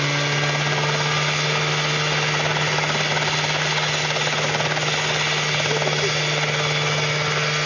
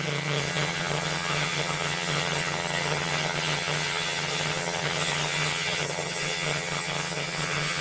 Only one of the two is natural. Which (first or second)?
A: first